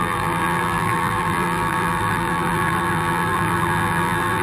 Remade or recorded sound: remade